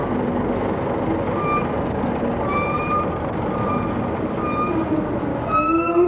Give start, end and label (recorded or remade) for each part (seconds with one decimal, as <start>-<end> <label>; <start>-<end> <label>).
0.0-5.3 recorded; 5.3-6.1 remade